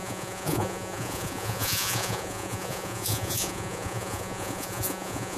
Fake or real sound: fake